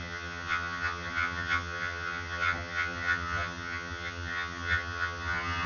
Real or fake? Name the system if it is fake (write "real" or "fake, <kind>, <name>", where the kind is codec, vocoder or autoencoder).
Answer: fake, vocoder, HiFi-GAN